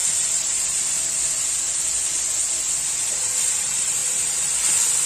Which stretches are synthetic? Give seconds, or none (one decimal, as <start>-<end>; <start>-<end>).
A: 3.1-4.0